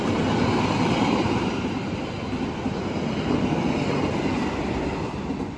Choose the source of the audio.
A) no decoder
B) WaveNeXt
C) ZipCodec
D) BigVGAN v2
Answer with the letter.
A